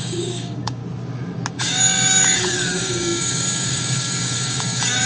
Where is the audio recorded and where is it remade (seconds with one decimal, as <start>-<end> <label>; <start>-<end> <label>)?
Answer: 0.0-0.8 remade; 0.8-1.5 recorded; 1.5-5.1 remade